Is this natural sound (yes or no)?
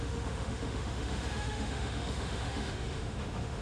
no